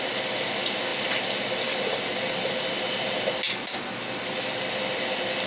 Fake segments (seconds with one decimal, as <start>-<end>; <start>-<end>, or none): none